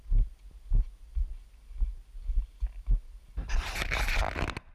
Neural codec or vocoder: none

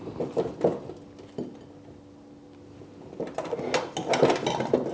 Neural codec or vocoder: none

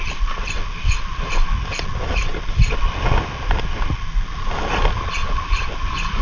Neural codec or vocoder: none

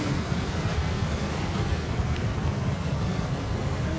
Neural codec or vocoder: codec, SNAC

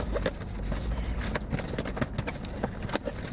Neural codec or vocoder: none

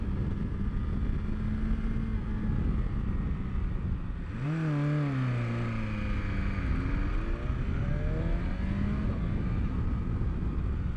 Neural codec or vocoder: none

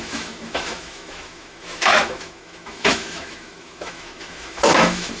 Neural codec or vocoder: autoencoder, DAC-VAE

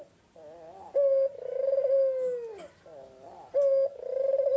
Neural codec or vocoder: none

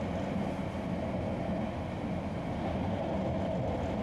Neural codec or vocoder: none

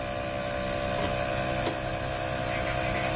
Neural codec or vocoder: none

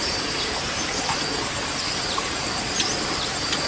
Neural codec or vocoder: vocoder, BigVGAN v2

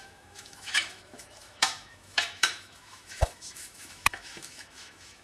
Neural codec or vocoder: autoencoder, DAC-VAE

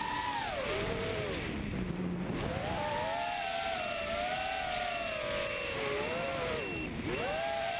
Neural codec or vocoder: none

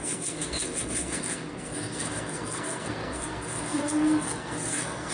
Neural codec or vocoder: codec, SNAC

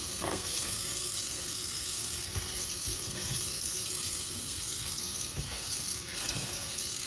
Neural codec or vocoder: codec, SNAC